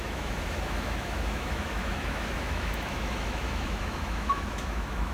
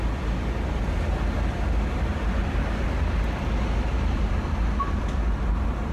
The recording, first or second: second